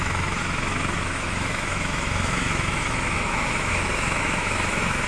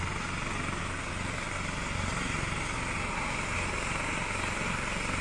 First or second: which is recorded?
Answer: second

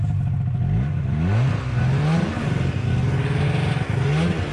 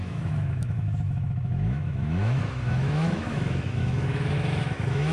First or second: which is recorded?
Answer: first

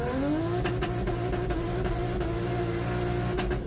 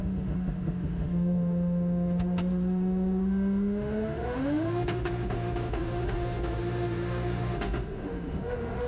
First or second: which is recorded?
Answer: first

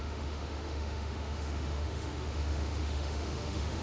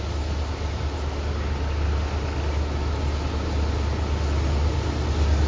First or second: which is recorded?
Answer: second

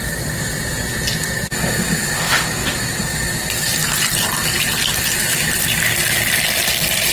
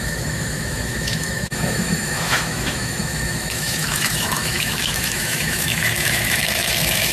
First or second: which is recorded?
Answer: first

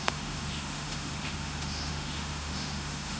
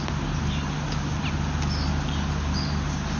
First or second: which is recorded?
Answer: second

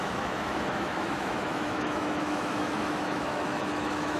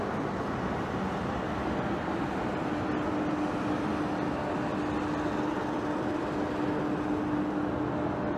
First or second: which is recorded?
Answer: second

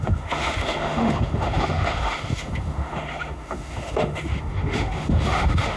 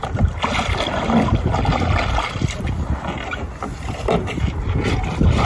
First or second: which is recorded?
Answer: second